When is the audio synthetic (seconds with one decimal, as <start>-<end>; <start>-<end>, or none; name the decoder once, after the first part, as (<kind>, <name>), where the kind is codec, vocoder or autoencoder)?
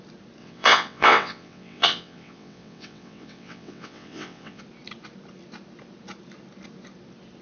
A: 0.4-4.6 (vocoder, WaveNeXt)